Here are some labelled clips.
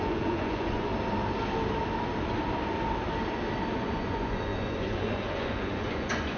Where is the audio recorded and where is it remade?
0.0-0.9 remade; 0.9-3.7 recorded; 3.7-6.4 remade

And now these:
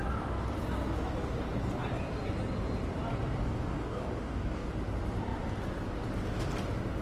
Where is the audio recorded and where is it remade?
0.0-3.4 recorded; 3.4-4.7 remade; 4.7-7.0 recorded

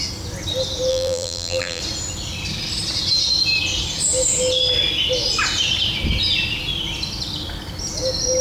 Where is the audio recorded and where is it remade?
0.0-0.9 recorded; 0.9-1.8 remade; 1.8-8.4 recorded

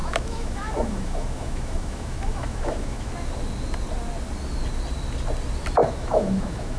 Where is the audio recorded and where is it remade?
0.0-3.1 remade; 3.1-5.8 recorded; 5.8-6.8 remade